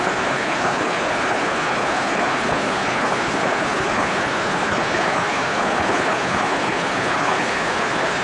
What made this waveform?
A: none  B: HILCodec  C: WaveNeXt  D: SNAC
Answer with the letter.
B